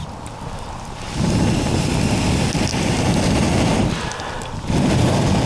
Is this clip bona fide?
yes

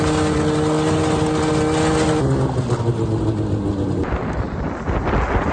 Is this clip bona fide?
yes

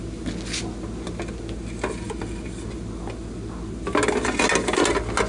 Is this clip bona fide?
yes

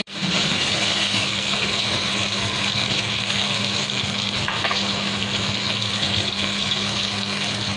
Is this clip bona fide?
no